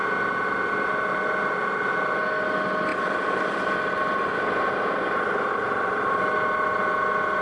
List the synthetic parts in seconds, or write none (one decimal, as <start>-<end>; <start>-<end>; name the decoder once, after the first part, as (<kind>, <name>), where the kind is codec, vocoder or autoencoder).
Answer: none